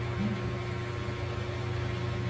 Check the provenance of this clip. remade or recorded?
recorded